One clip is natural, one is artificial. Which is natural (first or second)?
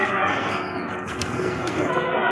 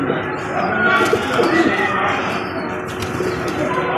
second